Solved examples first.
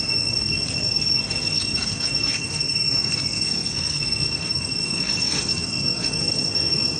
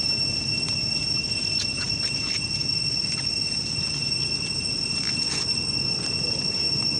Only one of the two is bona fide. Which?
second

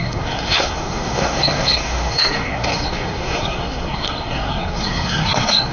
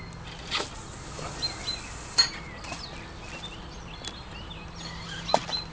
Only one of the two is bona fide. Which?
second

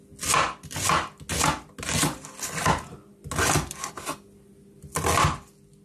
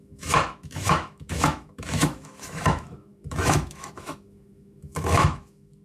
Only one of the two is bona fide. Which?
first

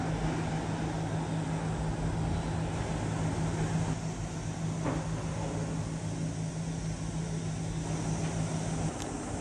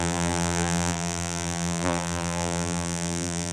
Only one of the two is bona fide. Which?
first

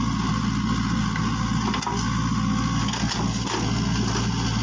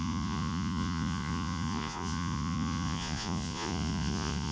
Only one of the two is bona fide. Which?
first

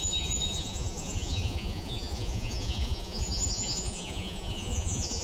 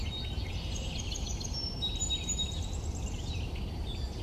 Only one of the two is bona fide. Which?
second